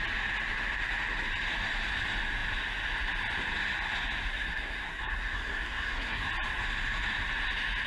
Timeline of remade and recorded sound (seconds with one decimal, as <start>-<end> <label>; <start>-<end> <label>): 0.0-4.3 recorded; 4.3-6.3 remade; 6.3-7.9 recorded